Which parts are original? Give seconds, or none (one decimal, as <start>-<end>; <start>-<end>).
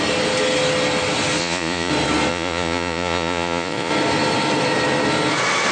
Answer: 0.0-1.4; 1.9-2.3; 3.9-5.7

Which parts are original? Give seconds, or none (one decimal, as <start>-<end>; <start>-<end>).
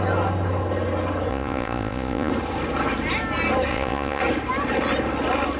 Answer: 0.0-1.3; 2.3-3.7; 4.2-5.6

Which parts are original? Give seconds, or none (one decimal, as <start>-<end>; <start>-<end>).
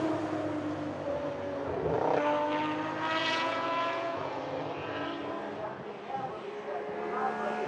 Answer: 0.0-3.2; 4.4-7.7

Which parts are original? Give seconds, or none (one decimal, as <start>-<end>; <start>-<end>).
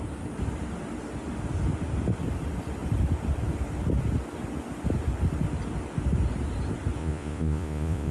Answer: 0.0-7.0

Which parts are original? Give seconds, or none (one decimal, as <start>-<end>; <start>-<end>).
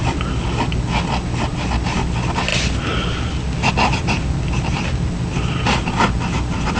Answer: 0.0-6.8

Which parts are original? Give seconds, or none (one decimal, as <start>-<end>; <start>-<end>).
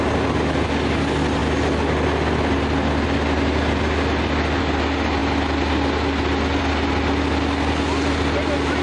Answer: 0.0-8.8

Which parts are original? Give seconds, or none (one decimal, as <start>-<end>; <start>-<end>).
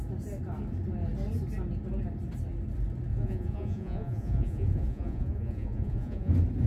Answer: 0.0-3.1; 6.3-6.7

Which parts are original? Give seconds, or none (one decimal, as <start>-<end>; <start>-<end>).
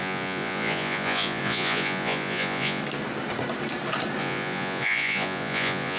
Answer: 2.8-4.2